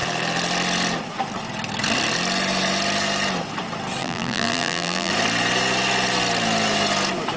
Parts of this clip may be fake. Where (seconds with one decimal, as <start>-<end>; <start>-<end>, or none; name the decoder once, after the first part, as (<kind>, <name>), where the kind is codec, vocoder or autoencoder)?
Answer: 4.0-5.1 (vocoder, BigVGAN v2)